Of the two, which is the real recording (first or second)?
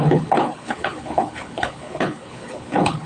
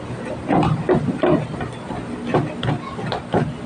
second